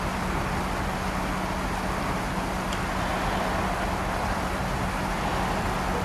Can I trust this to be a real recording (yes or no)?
yes